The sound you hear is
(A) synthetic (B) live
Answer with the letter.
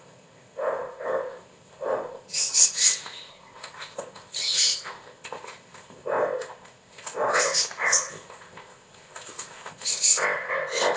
A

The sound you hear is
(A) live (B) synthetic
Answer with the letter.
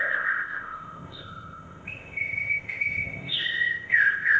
B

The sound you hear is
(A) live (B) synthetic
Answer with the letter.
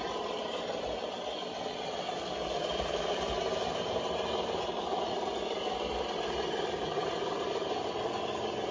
A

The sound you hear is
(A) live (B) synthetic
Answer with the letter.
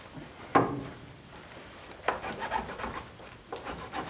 A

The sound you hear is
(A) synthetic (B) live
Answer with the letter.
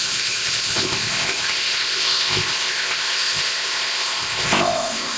A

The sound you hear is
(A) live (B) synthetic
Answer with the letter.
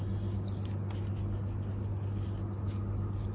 A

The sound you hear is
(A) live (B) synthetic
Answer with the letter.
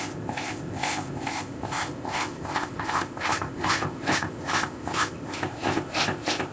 B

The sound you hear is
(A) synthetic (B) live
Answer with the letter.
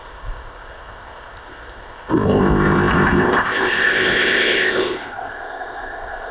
A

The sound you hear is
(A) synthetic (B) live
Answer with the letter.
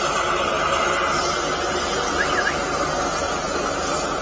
B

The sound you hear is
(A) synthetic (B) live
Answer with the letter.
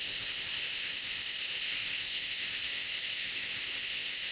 A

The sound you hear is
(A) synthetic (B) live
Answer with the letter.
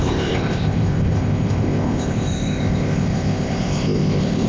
A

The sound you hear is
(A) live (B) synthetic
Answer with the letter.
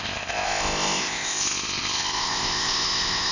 B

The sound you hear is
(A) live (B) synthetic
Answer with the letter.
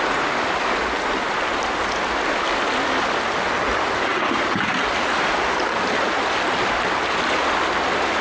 A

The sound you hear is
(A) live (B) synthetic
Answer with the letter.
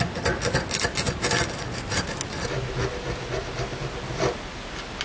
A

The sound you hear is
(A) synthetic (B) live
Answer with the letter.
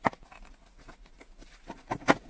B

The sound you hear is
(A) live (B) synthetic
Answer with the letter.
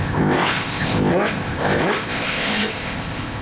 B